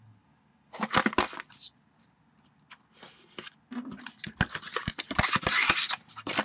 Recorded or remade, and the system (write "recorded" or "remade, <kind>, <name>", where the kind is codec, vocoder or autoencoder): recorded